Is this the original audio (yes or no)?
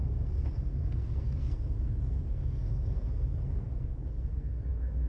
no